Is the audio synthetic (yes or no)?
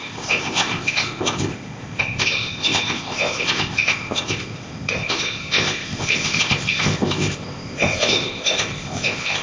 yes